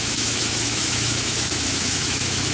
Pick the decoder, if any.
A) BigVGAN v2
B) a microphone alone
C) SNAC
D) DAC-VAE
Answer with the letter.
D